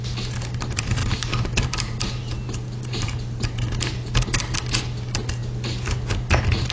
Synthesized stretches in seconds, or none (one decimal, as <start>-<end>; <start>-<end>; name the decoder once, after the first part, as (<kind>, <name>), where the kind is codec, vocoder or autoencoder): 1.0-3.8 (vocoder, BigVGAN v2)

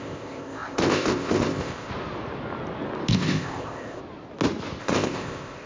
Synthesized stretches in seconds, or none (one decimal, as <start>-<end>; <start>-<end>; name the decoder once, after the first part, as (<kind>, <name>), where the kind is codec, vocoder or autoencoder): 0.0-1.9 (codec, ZipCodec); 3.1-4.0; 4.8-5.7

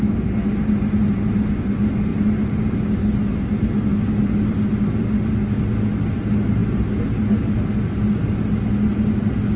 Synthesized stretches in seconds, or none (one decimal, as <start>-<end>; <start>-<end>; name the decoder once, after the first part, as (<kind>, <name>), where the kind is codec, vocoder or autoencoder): none

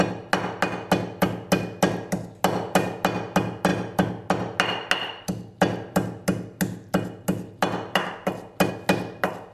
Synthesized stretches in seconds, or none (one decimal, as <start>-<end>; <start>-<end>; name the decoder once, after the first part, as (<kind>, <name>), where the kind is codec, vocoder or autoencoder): none

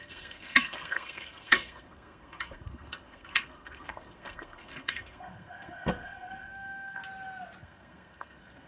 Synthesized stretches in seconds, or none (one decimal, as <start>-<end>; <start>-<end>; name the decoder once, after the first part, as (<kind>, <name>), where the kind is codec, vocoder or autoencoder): 0.0-7.0 (codec, SNAC); 7.6-8.7

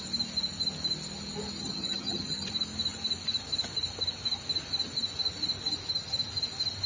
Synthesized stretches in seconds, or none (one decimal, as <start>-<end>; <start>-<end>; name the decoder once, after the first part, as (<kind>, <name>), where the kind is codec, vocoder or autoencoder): 1.6-2.5 (vocoder, HiFi-GAN)